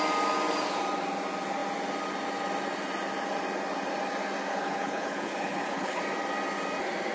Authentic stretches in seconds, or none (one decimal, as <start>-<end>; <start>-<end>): 0.0-4.5; 6.0-7.1